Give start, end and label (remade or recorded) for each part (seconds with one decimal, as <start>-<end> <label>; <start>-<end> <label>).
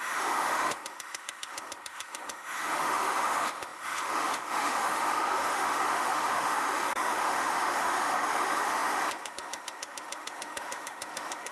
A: 0.0-11.5 remade